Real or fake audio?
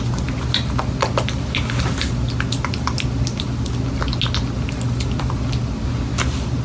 real